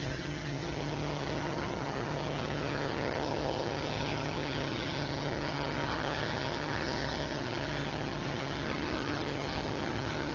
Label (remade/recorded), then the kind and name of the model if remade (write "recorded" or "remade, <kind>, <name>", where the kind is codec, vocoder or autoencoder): remade, vocoder, HiFi-GAN